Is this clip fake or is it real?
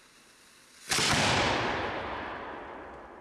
real